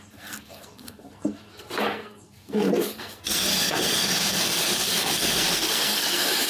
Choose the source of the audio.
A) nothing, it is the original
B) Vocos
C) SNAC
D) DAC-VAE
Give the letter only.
C